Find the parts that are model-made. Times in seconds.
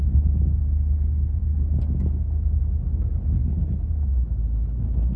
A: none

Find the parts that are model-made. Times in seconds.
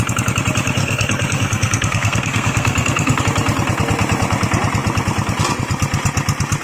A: 0.8-3.2 (codec, SNAC)